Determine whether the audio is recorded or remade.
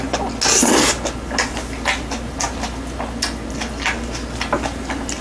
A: recorded